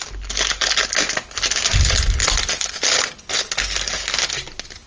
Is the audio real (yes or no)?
yes